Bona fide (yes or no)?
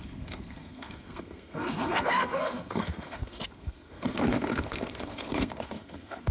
no